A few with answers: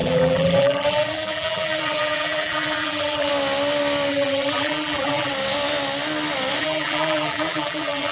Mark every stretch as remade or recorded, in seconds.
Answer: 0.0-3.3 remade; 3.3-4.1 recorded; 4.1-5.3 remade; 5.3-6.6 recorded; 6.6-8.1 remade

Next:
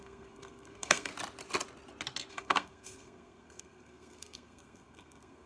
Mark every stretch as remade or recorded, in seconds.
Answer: 0.0-1.1 remade; 1.1-2.3 recorded; 2.3-5.5 remade

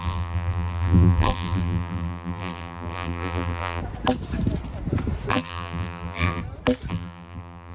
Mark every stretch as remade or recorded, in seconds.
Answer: 0.0-3.8 remade; 3.8-5.3 recorded; 5.3-6.4 remade; 6.4-6.9 recorded; 6.9-7.7 remade

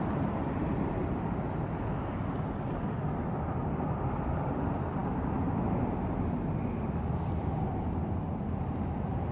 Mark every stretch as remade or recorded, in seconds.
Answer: 0.0-1.0 remade; 1.0-2.6 recorded; 2.6-9.3 remade